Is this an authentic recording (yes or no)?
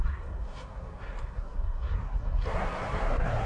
no